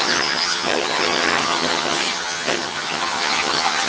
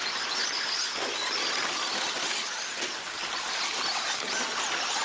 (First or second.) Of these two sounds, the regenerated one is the first